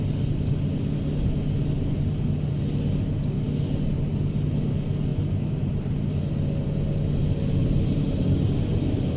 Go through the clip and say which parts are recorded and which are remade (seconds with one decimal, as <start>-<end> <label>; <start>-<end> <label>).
0.0-5.1 recorded; 5.1-5.9 remade; 5.9-7.6 recorded; 7.6-9.2 remade